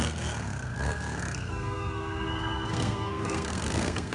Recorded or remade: remade